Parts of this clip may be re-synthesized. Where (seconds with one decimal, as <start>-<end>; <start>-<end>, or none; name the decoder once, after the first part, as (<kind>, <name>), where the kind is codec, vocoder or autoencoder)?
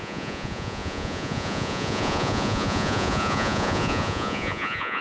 0.0-5.0 (vocoder, Vocos)